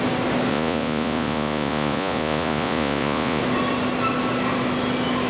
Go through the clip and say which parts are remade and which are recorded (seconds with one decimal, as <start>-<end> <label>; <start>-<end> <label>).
0.0-0.5 recorded; 0.5-3.4 remade; 3.4-5.3 recorded